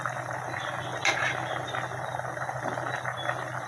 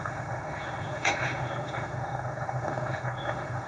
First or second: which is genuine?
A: first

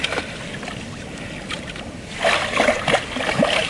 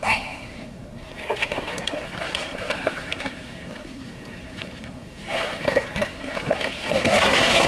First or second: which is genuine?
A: first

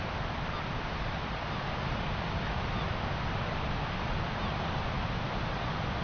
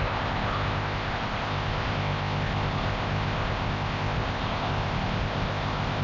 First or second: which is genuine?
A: first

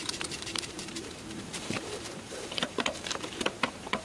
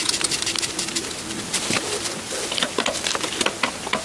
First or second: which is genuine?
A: second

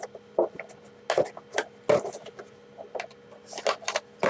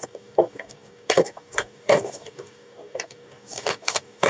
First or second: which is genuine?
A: first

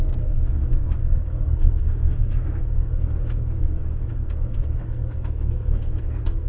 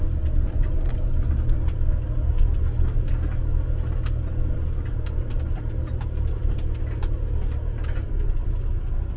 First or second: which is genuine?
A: second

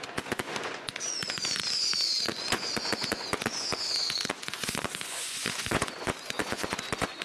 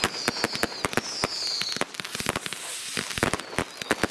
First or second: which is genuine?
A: second